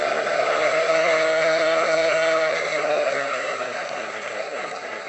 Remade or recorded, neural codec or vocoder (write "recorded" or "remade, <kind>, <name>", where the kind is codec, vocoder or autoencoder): remade, codec, SNAC